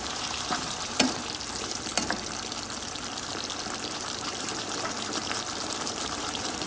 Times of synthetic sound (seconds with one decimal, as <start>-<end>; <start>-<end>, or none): 0.0-1.9; 3.3-6.7